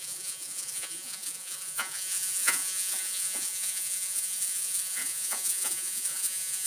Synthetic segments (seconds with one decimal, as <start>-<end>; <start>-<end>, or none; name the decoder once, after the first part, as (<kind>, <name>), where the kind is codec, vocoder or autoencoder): 0.0-6.7 (vocoder, Vocos)